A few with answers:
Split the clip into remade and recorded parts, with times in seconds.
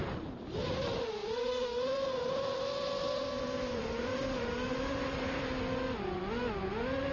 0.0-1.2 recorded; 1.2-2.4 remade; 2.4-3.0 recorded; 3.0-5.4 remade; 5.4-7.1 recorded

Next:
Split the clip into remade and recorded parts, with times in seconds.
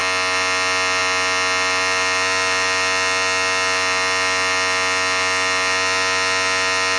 0.0-7.0 recorded